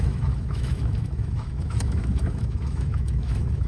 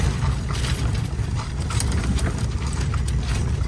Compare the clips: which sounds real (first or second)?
second